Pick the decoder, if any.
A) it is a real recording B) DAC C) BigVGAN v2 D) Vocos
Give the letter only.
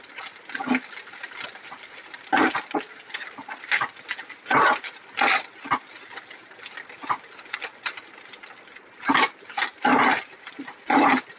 A